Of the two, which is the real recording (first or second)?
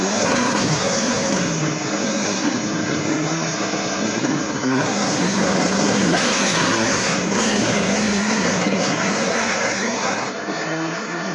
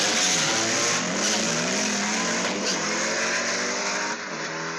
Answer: second